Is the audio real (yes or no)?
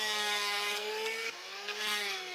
no